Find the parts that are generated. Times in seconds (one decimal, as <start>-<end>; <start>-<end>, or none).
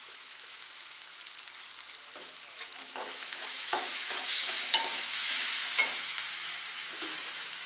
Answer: 0.0-1.2; 2.0-7.7